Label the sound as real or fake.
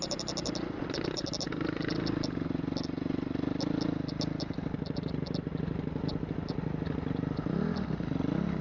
real